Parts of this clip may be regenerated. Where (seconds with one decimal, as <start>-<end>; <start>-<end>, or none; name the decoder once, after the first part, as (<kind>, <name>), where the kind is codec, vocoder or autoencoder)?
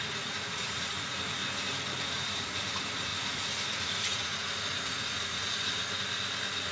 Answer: 0.0-1.4 (vocoder, Vocos); 2.0-5.8